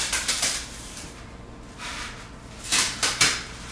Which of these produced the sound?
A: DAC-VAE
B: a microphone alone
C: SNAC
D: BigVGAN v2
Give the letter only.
D